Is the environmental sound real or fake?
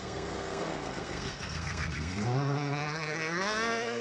fake